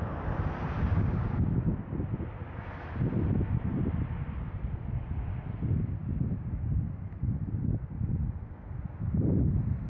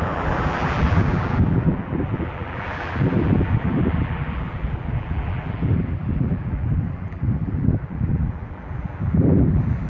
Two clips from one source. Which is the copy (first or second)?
second